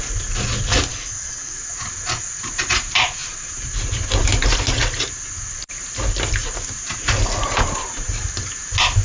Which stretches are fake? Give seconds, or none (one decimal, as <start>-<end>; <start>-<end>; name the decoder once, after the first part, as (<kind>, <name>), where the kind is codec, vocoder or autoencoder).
0.9-1.6 (codec, DAC)